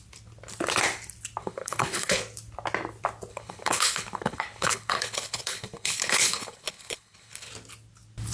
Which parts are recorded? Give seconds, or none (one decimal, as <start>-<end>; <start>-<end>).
0.0-1.4; 2.2-3.3; 7.5-8.3